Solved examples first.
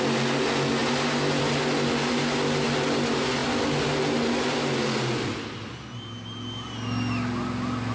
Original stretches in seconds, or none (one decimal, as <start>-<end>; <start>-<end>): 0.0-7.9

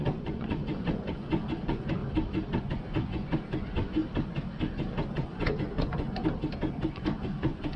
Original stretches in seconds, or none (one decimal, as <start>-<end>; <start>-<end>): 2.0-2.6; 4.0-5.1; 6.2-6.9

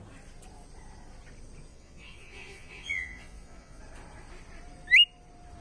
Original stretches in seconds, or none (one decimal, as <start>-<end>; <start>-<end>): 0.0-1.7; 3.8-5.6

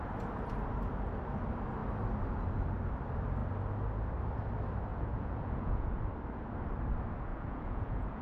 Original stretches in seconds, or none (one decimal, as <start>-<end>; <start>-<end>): 0.0-4.9; 6.0-7.3

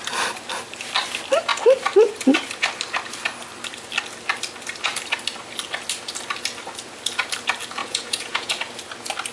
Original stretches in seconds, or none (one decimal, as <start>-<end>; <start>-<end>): 0.0-7.8; 8.5-9.3

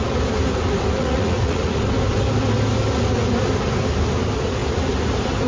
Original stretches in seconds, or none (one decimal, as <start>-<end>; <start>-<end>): 0.0-1.0; 1.8-5.5